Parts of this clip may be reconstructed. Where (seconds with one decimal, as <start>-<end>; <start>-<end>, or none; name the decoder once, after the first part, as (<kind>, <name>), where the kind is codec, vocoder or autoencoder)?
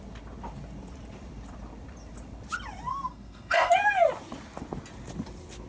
2.9-3.7 (codec, SNAC)